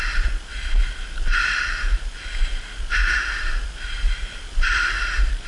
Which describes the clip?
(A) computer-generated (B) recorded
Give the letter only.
B